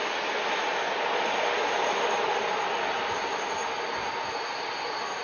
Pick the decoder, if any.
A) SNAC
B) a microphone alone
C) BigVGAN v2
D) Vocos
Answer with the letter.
B